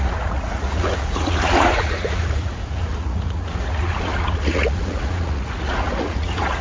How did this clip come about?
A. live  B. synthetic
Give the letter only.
B